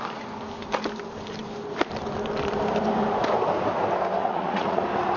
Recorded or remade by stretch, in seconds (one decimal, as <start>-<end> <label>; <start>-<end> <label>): 0.0-4.2 recorded; 4.2-4.8 remade; 4.8-5.2 recorded